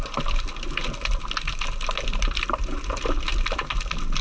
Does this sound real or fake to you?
real